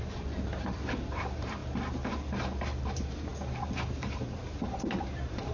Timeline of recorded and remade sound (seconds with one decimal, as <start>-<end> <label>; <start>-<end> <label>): 0.0-1.6 remade; 1.6-2.8 recorded; 2.8-5.5 remade